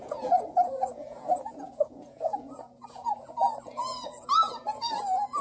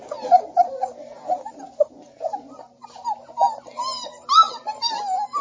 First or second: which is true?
second